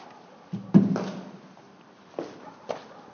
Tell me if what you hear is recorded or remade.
recorded